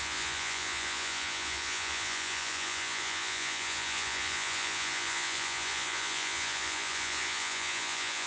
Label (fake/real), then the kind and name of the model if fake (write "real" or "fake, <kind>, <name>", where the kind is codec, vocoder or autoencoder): fake, vocoder, Vocos